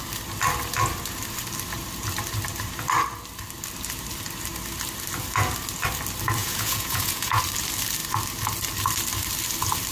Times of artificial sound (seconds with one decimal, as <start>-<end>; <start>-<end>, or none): 6.4-7.4